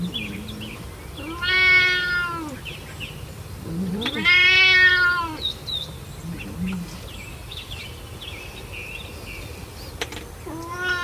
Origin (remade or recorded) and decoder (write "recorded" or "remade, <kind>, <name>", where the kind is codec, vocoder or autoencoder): recorded